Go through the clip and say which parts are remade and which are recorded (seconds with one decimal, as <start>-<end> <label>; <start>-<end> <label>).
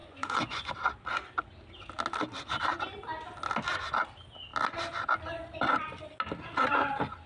0.0-0.7 remade; 0.7-7.3 recorded